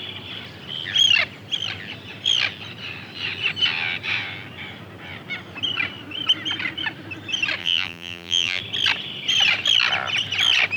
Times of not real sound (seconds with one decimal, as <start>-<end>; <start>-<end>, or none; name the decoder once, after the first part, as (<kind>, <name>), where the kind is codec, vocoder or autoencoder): 7.6-8.6 (vocoder, BigVGAN v2)